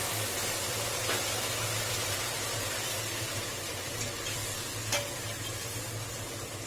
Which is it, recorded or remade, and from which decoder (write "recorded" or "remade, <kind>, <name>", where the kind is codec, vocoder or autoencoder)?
recorded